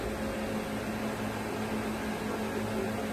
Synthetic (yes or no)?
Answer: no